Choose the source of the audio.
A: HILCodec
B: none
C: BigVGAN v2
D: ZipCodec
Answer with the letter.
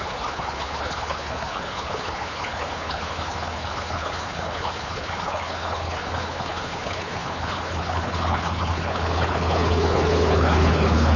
A